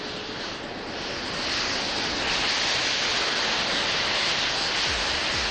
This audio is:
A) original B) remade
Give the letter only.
A